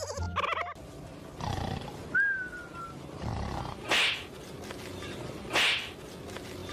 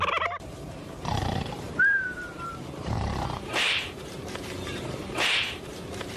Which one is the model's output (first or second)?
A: second